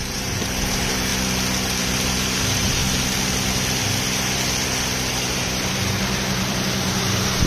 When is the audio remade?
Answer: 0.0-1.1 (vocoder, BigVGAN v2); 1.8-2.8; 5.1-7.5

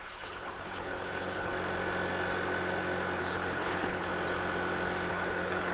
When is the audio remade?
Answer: 0.0-1.5 (codec, HILCodec); 3.2-4.1; 5.1-5.7